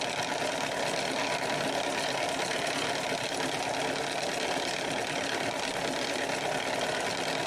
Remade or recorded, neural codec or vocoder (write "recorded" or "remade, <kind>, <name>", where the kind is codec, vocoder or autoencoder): recorded